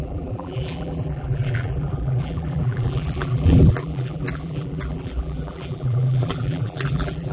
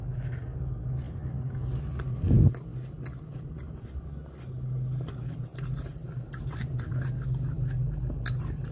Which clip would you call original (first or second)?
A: second